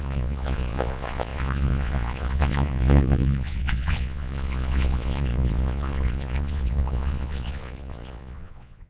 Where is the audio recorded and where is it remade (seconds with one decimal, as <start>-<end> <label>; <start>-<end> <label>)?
0.0-8.9 remade

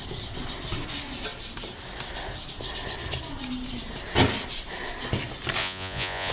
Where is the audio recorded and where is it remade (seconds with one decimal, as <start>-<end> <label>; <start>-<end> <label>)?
0.0-5.6 recorded; 5.6-6.3 remade

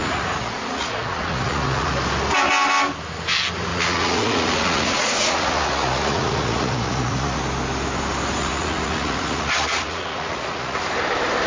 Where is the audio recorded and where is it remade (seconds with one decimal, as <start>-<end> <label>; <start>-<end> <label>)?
0.0-1.9 remade; 1.9-3.7 recorded; 3.7-7.4 remade; 7.4-8.4 recorded; 8.4-10.8 remade; 10.8-11.5 recorded

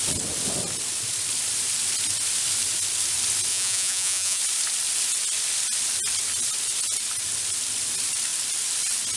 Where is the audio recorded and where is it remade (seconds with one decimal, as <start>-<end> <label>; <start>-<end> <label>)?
0.0-3.5 recorded; 3.5-4.4 remade; 4.4-9.2 recorded

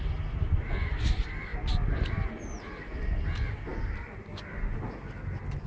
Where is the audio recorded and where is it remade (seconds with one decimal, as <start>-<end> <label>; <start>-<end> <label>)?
0.0-5.7 recorded